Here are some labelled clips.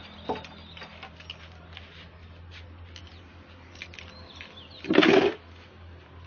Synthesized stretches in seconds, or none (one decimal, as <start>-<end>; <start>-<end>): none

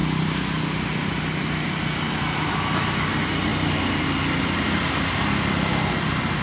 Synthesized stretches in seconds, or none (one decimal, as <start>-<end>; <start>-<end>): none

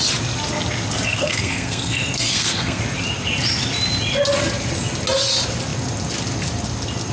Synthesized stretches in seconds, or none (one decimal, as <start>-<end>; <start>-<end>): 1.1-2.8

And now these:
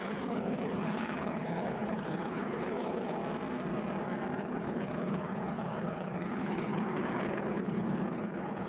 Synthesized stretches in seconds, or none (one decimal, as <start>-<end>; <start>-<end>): 0.0-3.2; 4.4-8.7

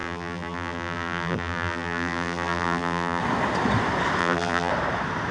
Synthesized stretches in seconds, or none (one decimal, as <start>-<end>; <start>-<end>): 0.0-3.2; 4.2-4.7

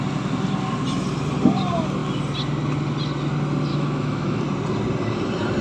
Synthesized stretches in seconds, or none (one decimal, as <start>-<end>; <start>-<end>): 3.7-4.4